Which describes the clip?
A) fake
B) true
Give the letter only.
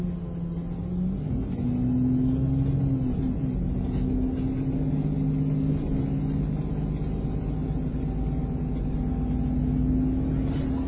B